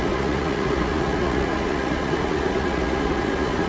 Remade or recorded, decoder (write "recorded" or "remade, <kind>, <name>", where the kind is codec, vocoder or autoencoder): remade, vocoder, Vocos